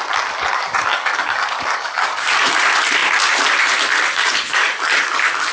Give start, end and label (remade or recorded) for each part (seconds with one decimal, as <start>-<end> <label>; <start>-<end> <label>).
0.0-0.5 recorded; 0.5-2.6 remade; 2.6-4.1 recorded; 4.1-5.5 remade